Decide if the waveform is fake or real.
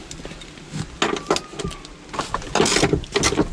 real